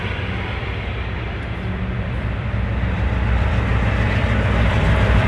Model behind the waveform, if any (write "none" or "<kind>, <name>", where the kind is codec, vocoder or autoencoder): vocoder, BigVGAN v2